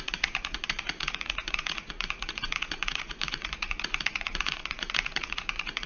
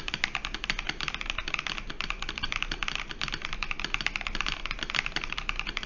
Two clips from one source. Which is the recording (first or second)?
second